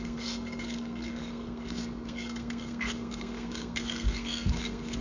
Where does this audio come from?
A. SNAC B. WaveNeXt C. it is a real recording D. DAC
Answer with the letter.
A